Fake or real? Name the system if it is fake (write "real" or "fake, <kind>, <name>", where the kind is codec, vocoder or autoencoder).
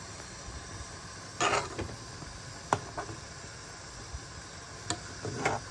real